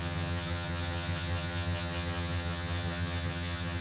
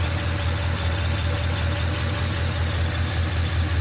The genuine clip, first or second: second